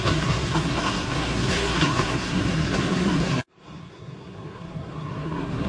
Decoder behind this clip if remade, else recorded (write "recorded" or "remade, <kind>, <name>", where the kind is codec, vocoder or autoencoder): remade, codec, SNAC